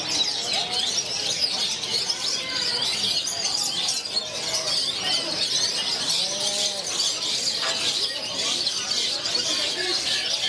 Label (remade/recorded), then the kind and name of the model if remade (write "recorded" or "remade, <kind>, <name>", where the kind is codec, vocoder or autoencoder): recorded